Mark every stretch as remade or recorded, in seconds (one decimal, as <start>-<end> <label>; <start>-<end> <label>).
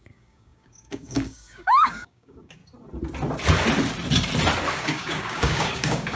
0.0-2.6 remade; 2.6-4.8 recorded; 4.8-6.2 remade